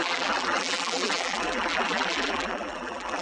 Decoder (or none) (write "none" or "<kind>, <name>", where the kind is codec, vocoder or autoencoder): vocoder, BigVGAN v2